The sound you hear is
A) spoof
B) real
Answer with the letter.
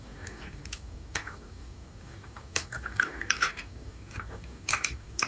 A